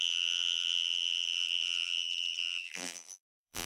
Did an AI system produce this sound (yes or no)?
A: yes